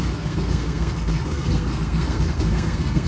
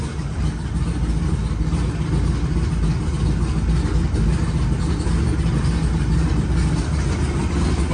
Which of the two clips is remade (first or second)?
first